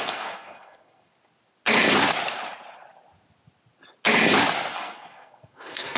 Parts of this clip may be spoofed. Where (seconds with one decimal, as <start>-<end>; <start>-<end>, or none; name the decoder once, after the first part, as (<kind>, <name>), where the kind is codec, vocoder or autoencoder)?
0.0-1.1 (codec, SNAC); 4.7-6.0